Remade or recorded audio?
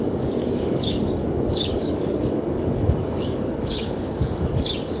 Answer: remade